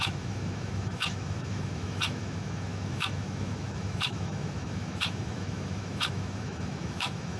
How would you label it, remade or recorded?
remade